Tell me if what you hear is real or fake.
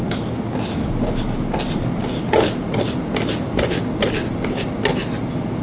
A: real